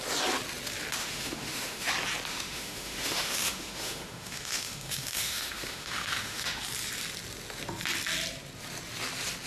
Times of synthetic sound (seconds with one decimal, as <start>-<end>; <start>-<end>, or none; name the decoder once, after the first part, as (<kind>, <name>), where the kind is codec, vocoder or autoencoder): 1.0-1.9 (autoencoder, DAC-VAE); 2.3-6.6